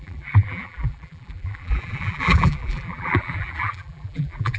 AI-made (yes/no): yes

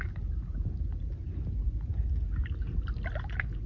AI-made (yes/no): no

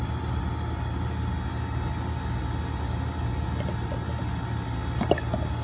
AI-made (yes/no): no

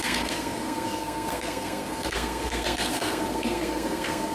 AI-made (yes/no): yes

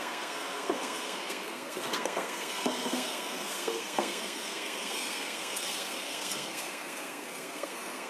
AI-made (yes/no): yes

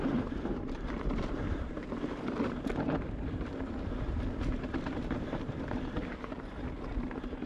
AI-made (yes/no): yes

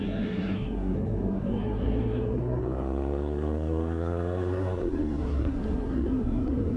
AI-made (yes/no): yes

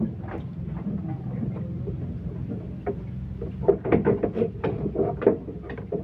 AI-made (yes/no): no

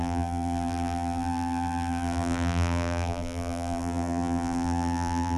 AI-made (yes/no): yes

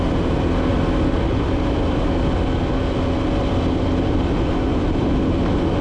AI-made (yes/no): no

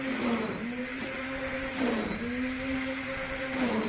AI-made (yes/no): yes